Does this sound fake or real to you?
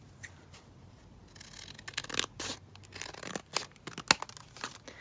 real